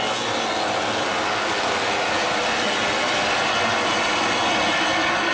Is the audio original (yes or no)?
yes